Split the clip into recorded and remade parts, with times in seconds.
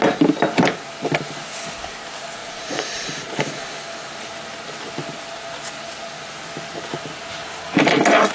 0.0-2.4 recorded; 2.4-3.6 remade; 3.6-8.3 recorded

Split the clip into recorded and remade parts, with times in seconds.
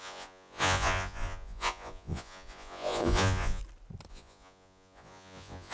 0.0-3.6 remade; 3.6-4.1 recorded; 4.1-5.7 remade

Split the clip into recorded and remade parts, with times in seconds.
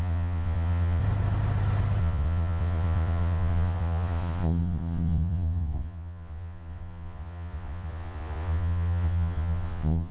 0.0-1.0 remade; 1.0-2.0 recorded; 2.0-10.1 remade